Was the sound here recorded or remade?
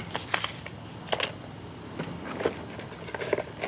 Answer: recorded